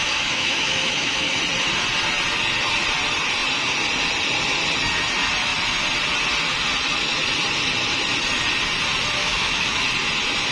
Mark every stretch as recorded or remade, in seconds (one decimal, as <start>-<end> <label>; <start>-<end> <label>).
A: 0.0-1.4 remade; 1.4-9.2 recorded; 9.2-9.8 remade; 9.8-10.5 recorded